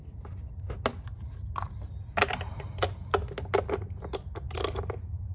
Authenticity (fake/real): real